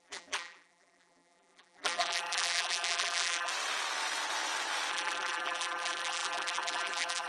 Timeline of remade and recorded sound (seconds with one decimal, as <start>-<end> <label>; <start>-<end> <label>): 0.0-3.5 remade; 3.5-4.9 recorded; 4.9-7.3 remade